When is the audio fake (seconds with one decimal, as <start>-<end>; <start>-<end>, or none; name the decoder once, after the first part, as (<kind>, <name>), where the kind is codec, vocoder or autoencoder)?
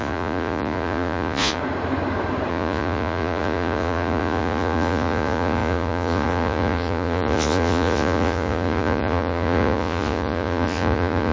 0.0-1.6 (vocoder, Vocos); 2.5-11.3